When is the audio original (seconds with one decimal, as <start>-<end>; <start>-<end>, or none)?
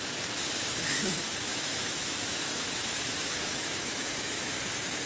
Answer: 0.0-1.5; 4.6-5.1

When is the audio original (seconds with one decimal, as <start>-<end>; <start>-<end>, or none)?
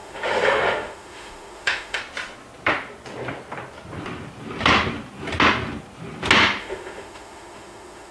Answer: 2.0-6.6